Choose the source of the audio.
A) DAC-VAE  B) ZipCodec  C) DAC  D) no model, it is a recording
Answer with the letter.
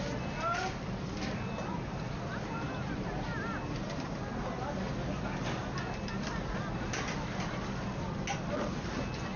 D